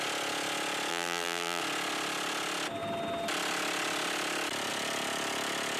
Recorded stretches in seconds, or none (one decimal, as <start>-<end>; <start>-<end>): 0.0-0.9; 1.6-5.8